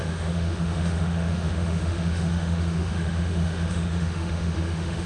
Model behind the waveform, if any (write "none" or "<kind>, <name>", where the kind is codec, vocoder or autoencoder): autoencoder, DAC-VAE